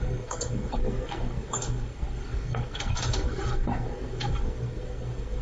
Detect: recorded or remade remade